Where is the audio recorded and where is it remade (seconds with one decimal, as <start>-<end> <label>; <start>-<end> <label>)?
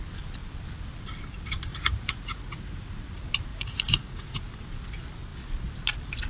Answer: 0.0-1.7 recorded; 1.7-3.0 remade; 3.0-3.5 recorded; 3.5-4.4 remade; 4.4-6.3 recorded